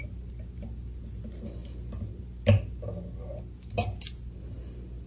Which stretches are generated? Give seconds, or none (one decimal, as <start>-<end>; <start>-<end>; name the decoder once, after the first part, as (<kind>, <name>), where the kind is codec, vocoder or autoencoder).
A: none